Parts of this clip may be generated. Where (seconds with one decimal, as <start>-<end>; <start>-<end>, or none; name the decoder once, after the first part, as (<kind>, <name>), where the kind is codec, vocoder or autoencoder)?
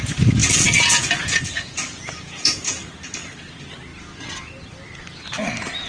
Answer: 0.4-2.9 (vocoder, Vocos)